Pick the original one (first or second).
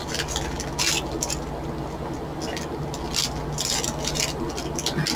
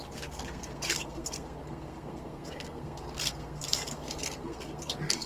first